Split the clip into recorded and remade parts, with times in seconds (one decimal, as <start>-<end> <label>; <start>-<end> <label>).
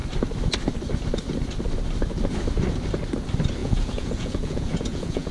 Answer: 0.0-3.6 recorded; 3.6-5.3 remade